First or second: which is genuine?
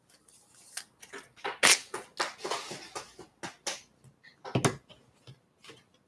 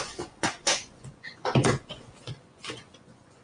first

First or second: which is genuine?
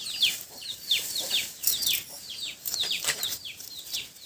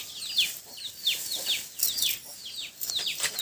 second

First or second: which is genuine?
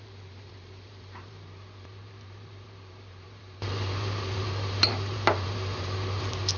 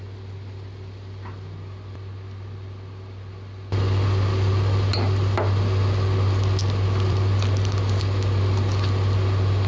second